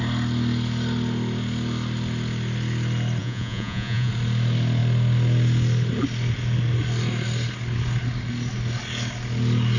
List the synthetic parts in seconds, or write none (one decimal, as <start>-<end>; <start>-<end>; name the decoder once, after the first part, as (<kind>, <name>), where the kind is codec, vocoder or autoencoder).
3.2-4.1 (vocoder, Vocos)